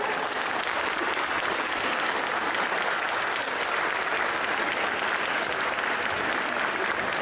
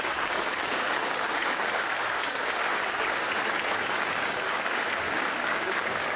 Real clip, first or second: first